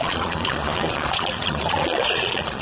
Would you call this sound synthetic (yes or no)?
yes